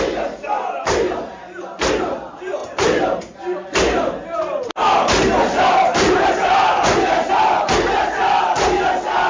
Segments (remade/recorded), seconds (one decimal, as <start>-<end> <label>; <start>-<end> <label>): 0.0-9.3 recorded